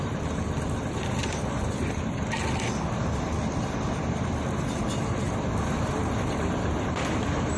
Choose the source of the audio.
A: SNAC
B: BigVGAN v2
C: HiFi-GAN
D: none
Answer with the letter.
B